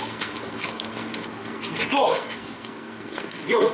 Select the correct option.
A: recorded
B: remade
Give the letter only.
B